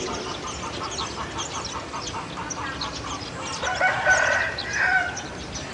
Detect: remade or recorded recorded